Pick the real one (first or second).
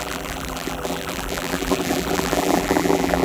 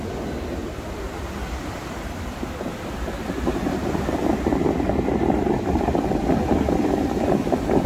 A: second